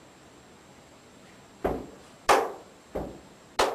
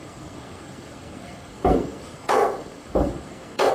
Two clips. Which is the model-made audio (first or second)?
second